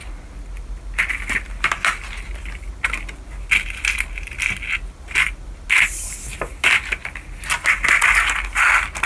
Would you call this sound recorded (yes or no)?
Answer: yes